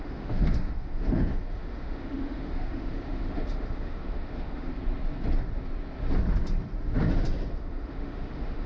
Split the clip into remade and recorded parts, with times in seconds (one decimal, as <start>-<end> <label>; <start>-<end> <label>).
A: 0.0-4.7 remade; 4.7-7.5 recorded; 7.5-8.7 remade